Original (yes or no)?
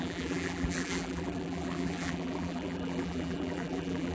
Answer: no